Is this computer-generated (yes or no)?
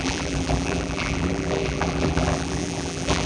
yes